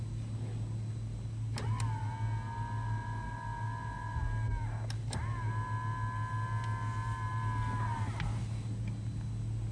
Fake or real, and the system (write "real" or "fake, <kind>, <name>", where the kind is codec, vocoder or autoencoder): real